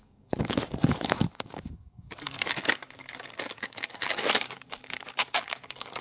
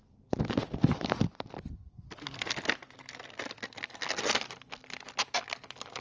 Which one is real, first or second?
second